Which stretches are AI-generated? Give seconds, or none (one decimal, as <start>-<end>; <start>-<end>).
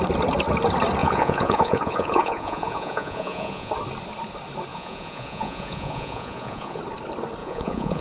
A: 1.0-3.7; 4.7-6.8; 7.4-8.0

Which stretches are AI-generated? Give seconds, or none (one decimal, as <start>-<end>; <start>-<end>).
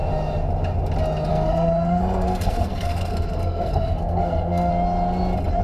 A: 1.3-4.7